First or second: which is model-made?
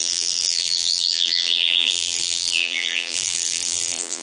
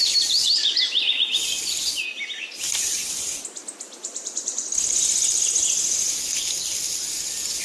first